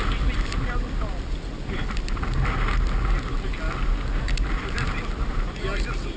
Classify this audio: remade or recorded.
recorded